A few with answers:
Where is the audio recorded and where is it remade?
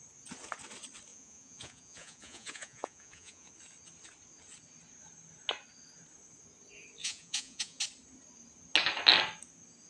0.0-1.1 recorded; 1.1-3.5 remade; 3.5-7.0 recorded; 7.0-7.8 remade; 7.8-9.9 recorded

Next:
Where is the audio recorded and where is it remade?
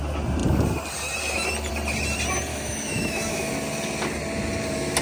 0.0-2.5 recorded; 2.5-3.5 remade; 3.5-5.0 recorded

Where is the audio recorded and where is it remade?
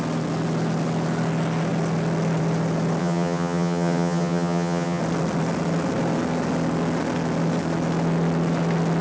0.0-3.0 recorded; 3.0-5.0 remade; 5.0-9.0 recorded